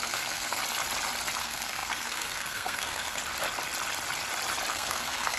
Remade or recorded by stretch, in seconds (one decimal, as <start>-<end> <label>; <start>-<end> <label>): 0.0-0.6 remade; 0.6-1.4 recorded; 1.4-3.2 remade; 3.2-4.7 recorded; 4.7-5.4 remade